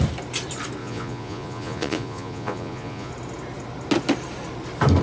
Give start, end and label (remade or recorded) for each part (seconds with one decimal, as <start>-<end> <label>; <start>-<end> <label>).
0.0-0.8 recorded; 0.8-3.1 remade; 3.1-5.0 recorded